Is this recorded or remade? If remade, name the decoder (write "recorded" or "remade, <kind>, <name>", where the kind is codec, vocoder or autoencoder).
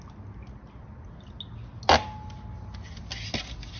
recorded